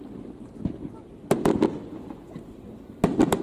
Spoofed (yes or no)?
no